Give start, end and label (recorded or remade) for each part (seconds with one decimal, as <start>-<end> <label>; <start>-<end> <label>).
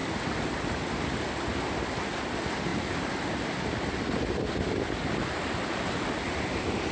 0.0-6.9 recorded